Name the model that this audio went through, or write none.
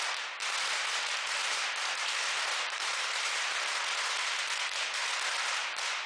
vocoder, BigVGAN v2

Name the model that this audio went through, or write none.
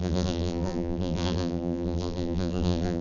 vocoder, BigVGAN v2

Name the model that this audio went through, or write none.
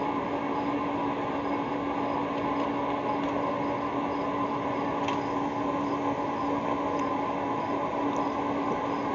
none